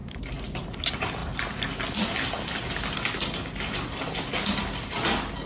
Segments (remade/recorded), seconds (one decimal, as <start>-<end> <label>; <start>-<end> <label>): 0.0-5.5 recorded